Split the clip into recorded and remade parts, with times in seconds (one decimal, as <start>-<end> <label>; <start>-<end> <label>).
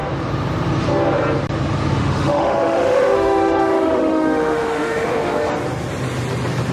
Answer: 0.0-2.0 recorded; 2.0-5.5 remade; 5.5-6.7 recorded